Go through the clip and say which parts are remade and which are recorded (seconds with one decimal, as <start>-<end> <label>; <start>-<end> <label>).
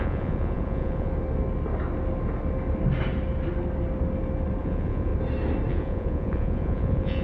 0.0-1.1 remade; 1.1-4.6 recorded; 4.6-5.1 remade; 5.1-5.7 recorded; 5.7-7.2 remade